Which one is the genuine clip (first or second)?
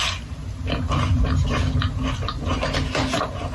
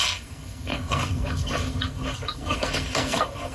first